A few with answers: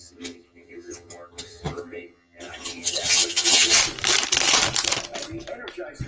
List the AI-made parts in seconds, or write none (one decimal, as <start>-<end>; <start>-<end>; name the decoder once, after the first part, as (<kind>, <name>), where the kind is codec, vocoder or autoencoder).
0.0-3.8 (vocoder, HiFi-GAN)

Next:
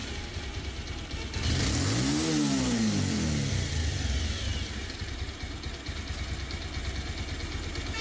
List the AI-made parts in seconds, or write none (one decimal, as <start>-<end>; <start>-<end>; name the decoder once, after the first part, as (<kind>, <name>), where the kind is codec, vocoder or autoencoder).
none

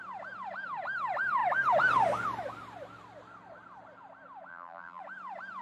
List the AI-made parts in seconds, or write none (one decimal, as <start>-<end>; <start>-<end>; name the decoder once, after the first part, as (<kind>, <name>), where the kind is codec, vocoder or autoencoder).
4.5-5.0 (vocoder, BigVGAN v2)